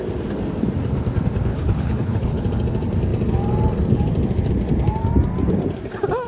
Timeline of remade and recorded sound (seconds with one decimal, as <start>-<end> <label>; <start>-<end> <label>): 0.0-1.5 recorded; 1.5-2.4 remade; 2.4-6.3 recorded